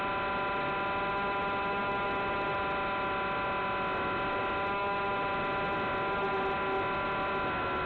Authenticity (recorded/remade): recorded